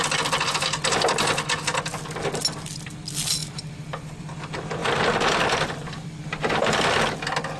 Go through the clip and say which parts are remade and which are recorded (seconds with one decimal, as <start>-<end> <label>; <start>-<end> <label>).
0.0-3.4 recorded; 3.4-4.3 remade; 4.3-4.8 recorded; 4.8-7.0 remade; 7.0-7.6 recorded